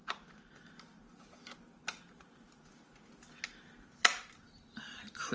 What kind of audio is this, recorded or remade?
recorded